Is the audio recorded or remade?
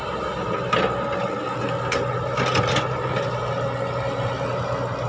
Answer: recorded